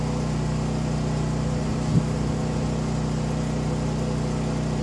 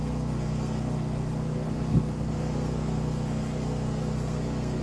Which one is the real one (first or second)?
first